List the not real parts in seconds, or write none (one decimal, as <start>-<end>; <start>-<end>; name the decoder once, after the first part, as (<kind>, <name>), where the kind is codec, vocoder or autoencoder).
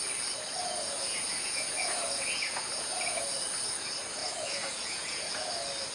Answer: 0.6-3.3 (vocoder, Vocos); 4.2-5.5